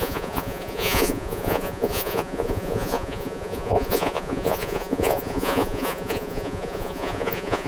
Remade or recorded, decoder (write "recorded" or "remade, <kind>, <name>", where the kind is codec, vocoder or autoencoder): remade, vocoder, Vocos